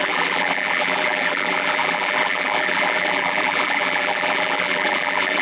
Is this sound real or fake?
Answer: fake